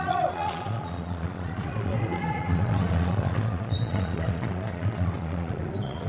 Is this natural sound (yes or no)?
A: no